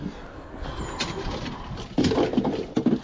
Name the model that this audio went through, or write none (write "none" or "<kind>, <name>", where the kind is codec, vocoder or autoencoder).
none